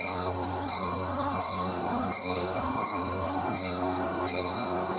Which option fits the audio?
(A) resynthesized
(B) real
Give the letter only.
A